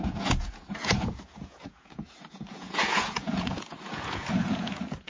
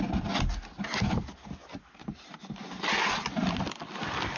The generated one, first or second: first